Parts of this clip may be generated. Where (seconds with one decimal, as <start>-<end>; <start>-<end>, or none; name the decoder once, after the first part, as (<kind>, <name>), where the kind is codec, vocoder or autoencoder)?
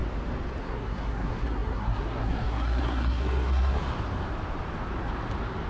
0.6-3.8 (codec, SNAC)